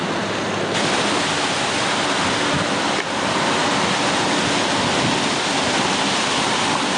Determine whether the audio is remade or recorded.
recorded